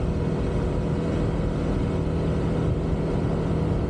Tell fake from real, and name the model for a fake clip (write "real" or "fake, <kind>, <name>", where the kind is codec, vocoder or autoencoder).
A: real